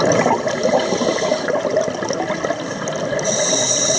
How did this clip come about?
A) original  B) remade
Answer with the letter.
A